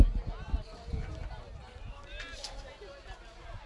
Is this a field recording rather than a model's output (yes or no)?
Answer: yes